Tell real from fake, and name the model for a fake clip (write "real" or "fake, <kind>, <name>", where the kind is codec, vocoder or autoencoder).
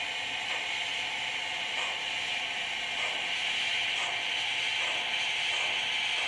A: real